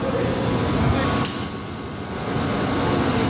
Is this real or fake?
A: real